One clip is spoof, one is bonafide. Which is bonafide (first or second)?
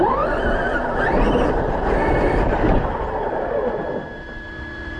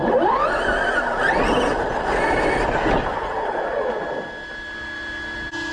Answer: second